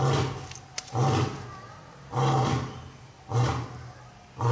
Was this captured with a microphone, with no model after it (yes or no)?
yes